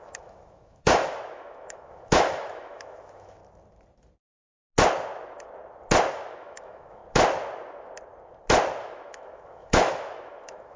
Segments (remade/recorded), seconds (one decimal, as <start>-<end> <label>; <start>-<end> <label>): 0.0-3.4 remade; 3.4-6.1 recorded; 6.1-7.0 remade; 7.0-8.8 recorded; 8.8-10.8 remade